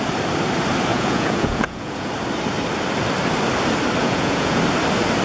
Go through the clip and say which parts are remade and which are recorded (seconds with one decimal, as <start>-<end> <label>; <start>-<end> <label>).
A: 0.0-0.9 recorded; 0.9-2.1 remade; 2.1-4.0 recorded; 4.0-4.6 remade; 4.6-5.2 recorded